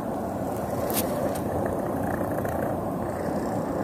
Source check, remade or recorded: remade